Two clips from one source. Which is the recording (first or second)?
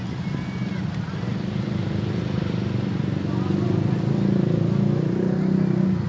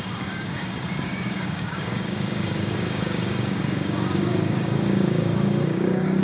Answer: first